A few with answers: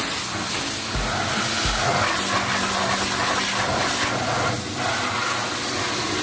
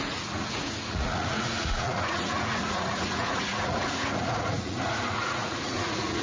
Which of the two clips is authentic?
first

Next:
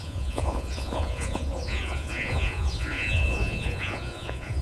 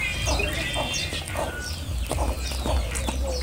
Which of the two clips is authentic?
second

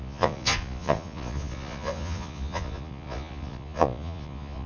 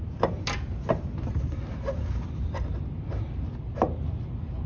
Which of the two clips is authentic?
second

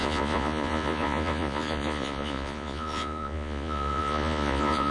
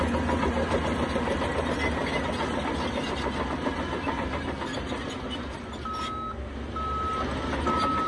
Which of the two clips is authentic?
second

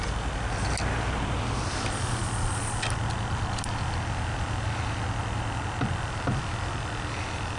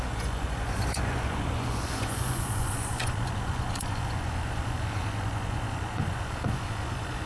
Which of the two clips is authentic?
first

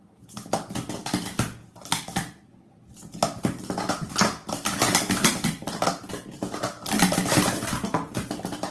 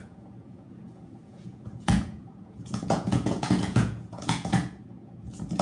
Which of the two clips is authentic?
first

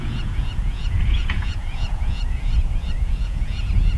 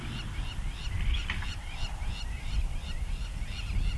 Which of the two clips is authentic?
second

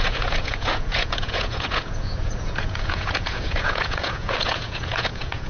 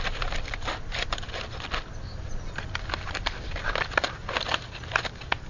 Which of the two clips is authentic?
second